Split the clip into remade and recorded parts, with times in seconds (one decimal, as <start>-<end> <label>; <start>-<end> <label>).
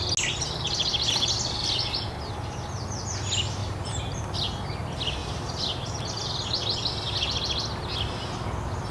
0.0-3.6 recorded; 3.6-4.2 remade; 4.2-5.2 recorded; 5.2-6.0 remade; 6.0-8.9 recorded